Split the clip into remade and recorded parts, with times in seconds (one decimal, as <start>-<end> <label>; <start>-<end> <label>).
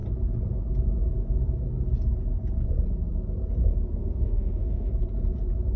0.0-4.0 recorded; 4.0-4.9 remade; 4.9-5.8 recorded